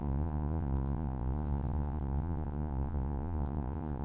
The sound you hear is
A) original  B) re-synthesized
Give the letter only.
B